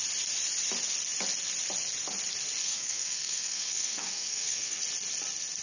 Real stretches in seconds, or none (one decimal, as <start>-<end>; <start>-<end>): 0.0-2.6; 4.8-5.6

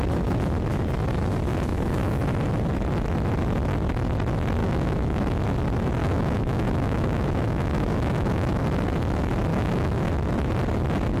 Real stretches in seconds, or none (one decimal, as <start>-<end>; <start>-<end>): 0.0-1.5; 2.2-4.6; 5.2-6.0; 8.6-9.5; 10.1-11.2

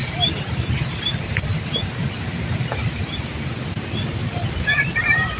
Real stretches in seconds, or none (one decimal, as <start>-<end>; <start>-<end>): 1.1-2.0; 3.6-4.2

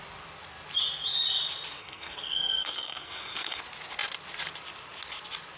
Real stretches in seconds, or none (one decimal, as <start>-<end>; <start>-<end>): 0.0-1.8; 3.6-5.6

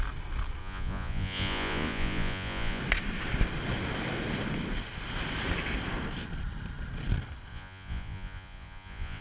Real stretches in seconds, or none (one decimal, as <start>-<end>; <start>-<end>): 0.0-0.6; 2.8-7.5

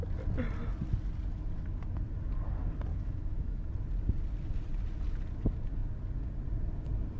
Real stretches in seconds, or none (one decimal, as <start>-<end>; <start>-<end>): 0.0-2.9; 3.7-7.2

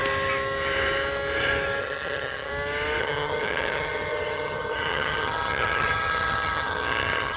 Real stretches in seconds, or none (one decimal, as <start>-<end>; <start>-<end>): 0.0-1.8; 2.5-3.0